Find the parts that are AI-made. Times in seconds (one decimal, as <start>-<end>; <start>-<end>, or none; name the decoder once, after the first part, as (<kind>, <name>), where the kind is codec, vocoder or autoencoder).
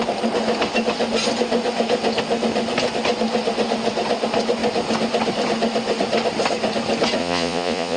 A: 7.2-8.0 (vocoder, Vocos)